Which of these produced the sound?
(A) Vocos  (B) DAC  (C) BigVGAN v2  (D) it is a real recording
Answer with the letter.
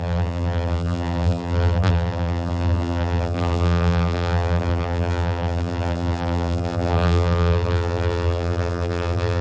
C